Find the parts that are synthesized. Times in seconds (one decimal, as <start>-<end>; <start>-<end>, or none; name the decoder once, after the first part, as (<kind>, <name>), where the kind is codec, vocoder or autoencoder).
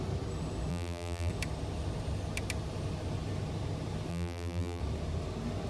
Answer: 0.7-1.3 (vocoder, BigVGAN v2); 4.1-4.8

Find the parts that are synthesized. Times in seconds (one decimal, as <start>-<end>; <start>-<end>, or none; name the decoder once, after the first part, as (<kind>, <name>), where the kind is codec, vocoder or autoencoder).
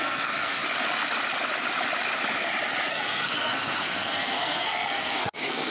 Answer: 0.0-0.6 (codec, SNAC); 2.9-5.7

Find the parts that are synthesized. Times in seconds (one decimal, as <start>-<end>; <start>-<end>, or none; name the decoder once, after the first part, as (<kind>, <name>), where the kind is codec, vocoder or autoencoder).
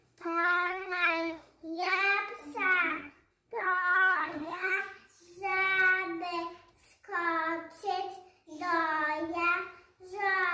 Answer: 0.0-2.0 (codec, SNAC); 2.9-4.8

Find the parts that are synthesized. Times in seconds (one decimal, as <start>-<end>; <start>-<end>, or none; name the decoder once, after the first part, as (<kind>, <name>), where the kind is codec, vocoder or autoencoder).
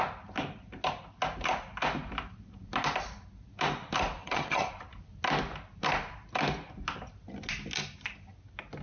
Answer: 4.2-4.7 (vocoder, HiFi-GAN)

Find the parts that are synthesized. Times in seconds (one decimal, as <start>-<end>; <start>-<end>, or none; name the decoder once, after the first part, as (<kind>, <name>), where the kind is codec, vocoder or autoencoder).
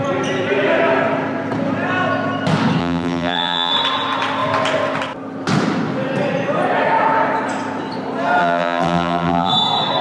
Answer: 2.8-3.7 (vocoder, BigVGAN v2); 8.4-9.5